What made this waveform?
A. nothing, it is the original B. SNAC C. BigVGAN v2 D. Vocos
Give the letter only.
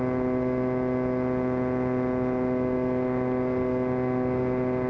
A